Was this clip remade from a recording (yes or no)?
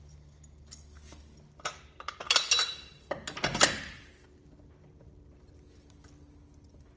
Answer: no